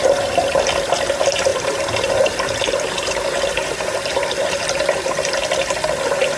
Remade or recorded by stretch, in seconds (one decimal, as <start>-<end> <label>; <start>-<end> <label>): 0.0-1.5 recorded; 1.5-5.3 remade; 5.3-6.4 recorded

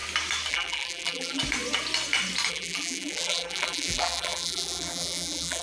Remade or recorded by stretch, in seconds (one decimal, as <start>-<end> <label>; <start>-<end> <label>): 0.0-0.5 recorded; 0.5-1.4 remade; 1.4-2.5 recorded; 2.5-5.6 remade